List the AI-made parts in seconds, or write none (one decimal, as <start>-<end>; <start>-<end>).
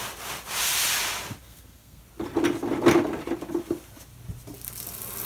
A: 1.4-2.0